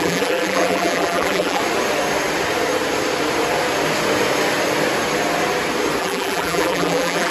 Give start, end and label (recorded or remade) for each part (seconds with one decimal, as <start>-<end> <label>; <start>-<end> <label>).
0.0-1.6 remade; 1.6-6.0 recorded; 6.0-7.3 remade